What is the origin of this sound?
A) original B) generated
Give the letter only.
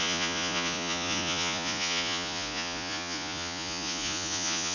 B